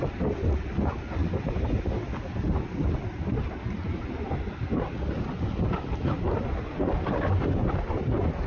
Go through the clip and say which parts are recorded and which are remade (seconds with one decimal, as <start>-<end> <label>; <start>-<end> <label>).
0.0-8.5 recorded